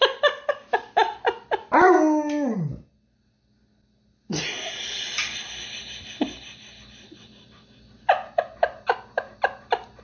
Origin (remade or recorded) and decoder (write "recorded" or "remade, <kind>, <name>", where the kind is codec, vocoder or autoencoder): recorded